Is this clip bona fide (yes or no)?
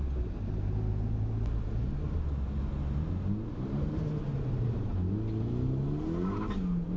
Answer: yes